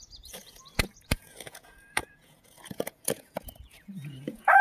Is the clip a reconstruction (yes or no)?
yes